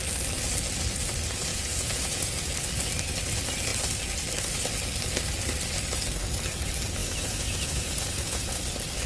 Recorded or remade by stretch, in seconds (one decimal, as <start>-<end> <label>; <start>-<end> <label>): 0.0-1.5 recorded; 1.5-2.5 remade; 2.5-7.0 recorded; 7.0-8.6 remade; 8.6-9.1 recorded